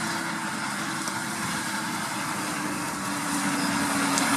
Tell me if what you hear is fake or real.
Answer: fake